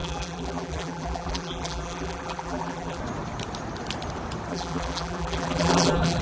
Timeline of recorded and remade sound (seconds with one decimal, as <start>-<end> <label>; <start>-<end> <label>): 0.0-3.0 remade; 3.0-4.5 recorded; 4.5-6.2 remade